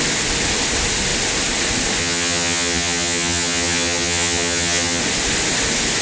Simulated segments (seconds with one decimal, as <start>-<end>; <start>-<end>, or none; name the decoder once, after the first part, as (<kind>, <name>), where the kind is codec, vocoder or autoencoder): 2.0-5.0 (vocoder, HiFi-GAN)